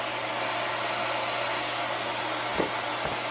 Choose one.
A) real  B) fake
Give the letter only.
A